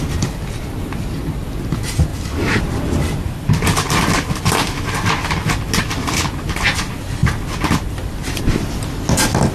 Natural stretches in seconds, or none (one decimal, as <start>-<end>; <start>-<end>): 0.0-2.1; 4.4-9.5